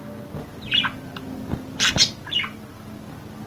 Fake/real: real